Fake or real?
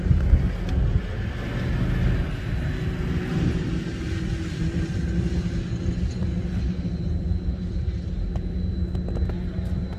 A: real